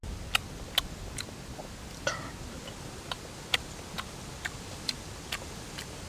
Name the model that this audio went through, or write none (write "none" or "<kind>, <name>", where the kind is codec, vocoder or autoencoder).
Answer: none